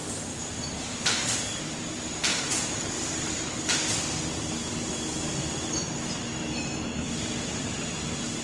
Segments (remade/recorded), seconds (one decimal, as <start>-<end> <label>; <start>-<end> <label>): 0.0-1.4 remade; 1.4-8.4 recorded